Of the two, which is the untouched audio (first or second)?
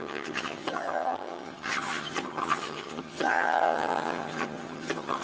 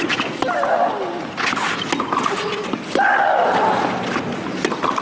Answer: second